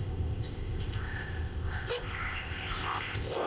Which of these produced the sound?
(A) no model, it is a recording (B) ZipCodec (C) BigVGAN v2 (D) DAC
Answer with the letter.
B